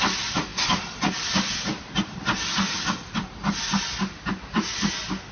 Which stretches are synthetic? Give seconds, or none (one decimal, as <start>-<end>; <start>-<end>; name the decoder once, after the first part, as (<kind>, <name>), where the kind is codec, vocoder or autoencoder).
none